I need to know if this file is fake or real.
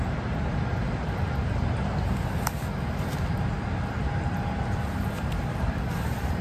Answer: real